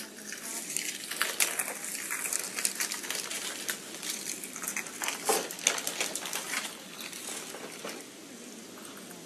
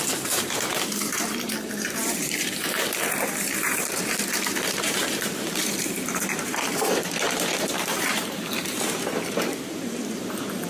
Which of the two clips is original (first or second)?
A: first